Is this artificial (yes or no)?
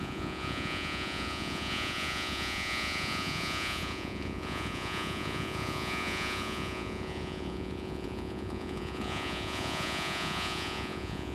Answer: yes